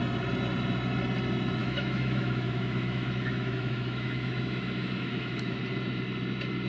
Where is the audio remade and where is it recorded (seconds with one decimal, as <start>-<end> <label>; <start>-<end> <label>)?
0.0-1.6 recorded; 1.6-5.6 remade; 5.6-6.7 recorded